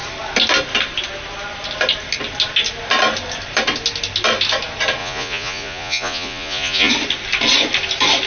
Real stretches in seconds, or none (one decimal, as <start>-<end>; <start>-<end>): 0.0-5.0; 6.9-8.3